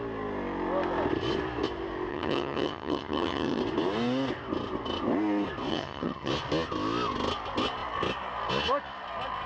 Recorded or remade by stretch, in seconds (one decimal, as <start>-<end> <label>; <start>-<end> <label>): 0.0-2.1 recorded; 2.1-3.6 remade; 3.6-5.7 recorded; 5.7-6.3 remade; 6.3-9.5 recorded